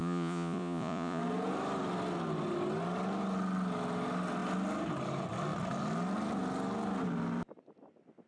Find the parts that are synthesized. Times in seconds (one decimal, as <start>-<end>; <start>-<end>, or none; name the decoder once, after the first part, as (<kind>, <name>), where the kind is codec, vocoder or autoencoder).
0.0-1.2 (vocoder, Vocos)